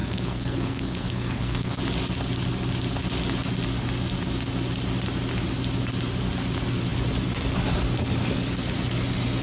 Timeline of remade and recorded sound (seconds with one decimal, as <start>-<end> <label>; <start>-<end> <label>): 0.0-1.8 remade; 1.8-9.4 recorded